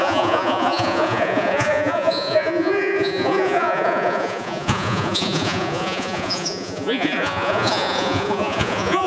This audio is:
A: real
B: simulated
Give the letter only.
B